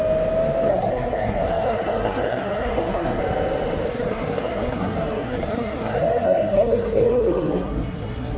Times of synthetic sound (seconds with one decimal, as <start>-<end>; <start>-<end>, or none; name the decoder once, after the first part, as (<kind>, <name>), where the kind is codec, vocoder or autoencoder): 0.7-3.2 (codec, SNAC); 3.9-8.4